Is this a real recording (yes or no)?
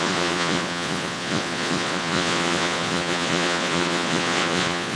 no